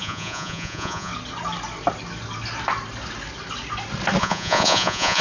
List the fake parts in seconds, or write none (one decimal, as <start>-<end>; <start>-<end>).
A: 0.0-1.1; 4.2-5.2